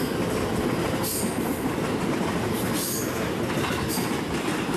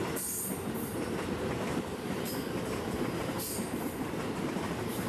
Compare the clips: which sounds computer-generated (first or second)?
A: second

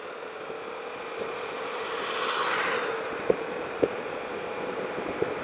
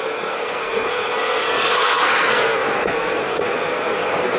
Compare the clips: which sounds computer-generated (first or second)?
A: second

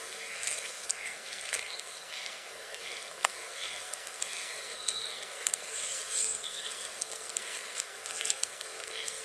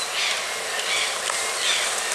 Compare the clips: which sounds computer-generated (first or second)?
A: first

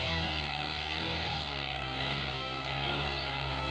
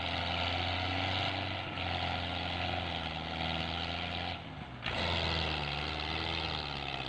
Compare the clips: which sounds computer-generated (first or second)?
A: first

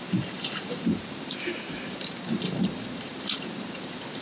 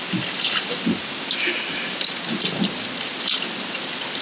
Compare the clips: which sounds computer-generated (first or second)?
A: first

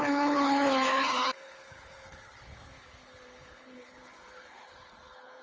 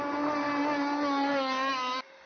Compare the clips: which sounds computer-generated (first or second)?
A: first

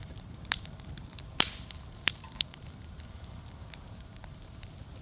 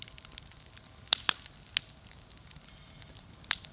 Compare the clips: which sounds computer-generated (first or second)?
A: first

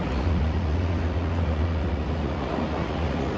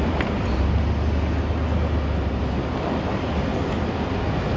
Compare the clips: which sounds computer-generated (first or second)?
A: first